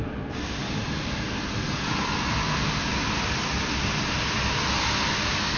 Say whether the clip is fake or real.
real